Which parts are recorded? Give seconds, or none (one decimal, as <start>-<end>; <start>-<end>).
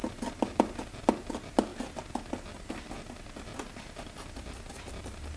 0.0-5.4